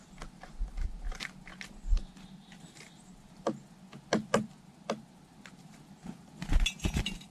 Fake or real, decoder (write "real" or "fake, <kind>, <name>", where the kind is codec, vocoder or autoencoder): real